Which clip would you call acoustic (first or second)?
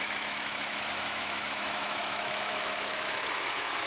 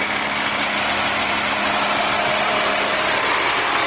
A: second